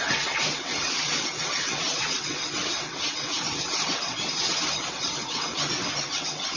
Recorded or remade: remade